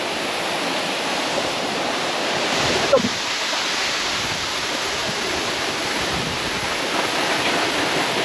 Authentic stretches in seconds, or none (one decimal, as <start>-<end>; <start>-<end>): 0.0-8.2